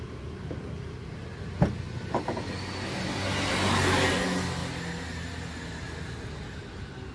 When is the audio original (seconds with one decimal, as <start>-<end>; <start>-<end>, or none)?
0.0-7.1